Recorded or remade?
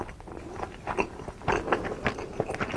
recorded